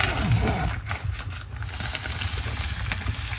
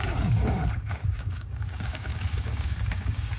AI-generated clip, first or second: second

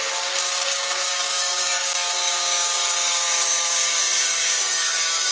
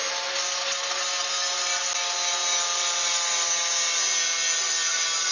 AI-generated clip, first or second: first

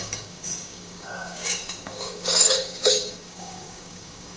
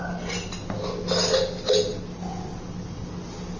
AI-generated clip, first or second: first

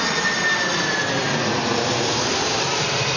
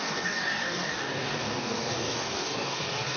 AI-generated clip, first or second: second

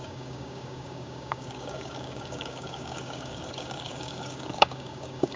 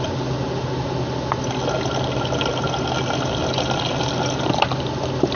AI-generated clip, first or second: first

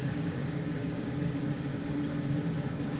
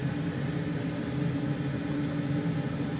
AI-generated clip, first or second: first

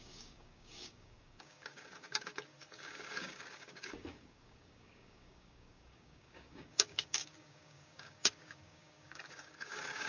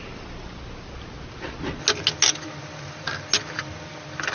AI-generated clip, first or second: first